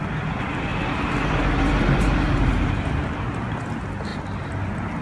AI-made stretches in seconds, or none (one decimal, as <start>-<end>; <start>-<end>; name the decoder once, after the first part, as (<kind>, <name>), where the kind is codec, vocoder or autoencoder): 0.7-3.5 (vocoder, BigVGAN v2)